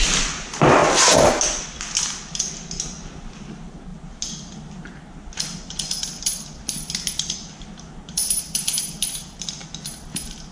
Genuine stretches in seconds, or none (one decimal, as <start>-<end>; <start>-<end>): 0.0-10.5